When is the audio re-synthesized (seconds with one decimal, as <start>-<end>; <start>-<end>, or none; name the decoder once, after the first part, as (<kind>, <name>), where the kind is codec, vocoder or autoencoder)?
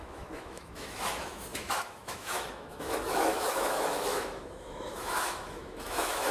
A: 0.0-6.3 (autoencoder, DAC-VAE)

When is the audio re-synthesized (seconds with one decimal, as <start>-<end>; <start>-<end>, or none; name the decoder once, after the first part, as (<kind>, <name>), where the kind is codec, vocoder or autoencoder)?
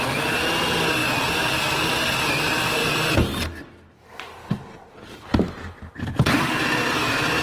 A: none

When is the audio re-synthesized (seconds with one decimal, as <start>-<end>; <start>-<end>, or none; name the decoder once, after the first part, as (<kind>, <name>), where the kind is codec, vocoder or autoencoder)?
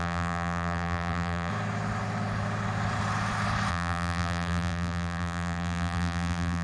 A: 0.0-1.5 (vocoder, BigVGAN v2); 3.7-6.6